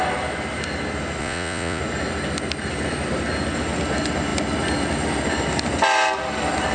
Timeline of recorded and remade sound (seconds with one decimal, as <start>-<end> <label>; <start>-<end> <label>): 0.0-1.2 recorded; 1.2-1.8 remade; 1.8-6.7 recorded